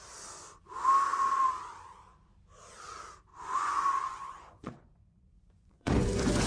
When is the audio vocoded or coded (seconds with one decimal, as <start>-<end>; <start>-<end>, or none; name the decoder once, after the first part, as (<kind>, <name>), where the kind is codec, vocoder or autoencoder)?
3.3-6.5 (vocoder, Vocos)